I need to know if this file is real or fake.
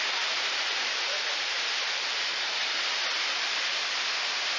real